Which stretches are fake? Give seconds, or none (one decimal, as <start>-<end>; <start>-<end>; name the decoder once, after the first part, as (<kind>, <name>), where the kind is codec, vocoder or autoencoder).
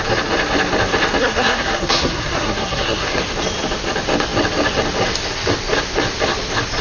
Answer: 1.2-3.2 (codec, SNAC)